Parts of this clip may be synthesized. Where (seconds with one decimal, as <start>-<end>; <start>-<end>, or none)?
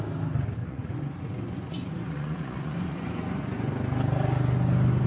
0.6-3.7